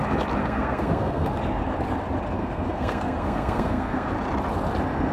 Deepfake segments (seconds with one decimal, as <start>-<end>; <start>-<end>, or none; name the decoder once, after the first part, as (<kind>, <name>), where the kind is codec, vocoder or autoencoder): 0.4-1.3 (codec, SNAC); 2.4-4.1